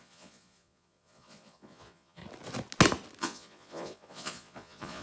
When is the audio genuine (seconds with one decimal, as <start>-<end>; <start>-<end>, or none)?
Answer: 2.2-3.2

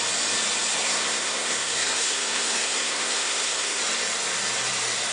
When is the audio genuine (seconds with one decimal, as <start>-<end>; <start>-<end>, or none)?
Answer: 0.0-0.7; 3.8-5.1

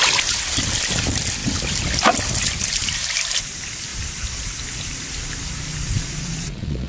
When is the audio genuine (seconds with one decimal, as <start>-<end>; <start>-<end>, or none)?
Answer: 0.0-6.0

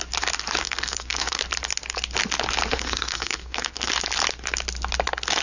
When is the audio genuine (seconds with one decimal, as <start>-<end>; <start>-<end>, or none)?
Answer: 0.0-0.6; 1.4-2.7; 3.9-5.4

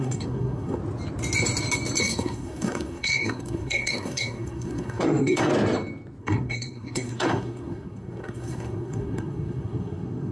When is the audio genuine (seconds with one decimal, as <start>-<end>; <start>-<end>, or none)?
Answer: 0.8-2.0; 5.5-6.2